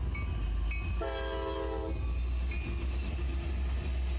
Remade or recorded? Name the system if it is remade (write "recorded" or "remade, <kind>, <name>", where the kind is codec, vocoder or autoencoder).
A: recorded